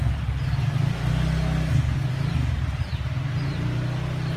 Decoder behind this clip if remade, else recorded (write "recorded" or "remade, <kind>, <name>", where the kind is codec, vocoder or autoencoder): recorded